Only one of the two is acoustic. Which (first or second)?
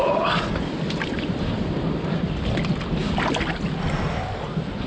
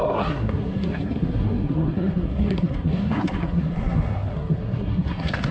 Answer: first